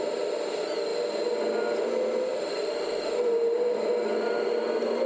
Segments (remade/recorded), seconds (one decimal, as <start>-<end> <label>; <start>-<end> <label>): 0.0-2.3 recorded; 2.3-3.9 remade; 3.9-5.1 recorded